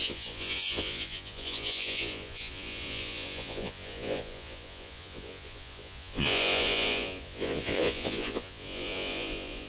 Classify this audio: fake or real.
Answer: fake